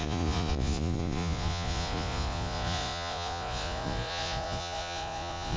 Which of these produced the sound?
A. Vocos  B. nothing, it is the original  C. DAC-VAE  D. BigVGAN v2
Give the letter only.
A